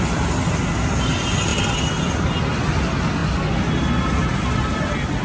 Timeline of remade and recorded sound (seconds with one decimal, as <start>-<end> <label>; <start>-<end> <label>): 0.0-5.2 recorded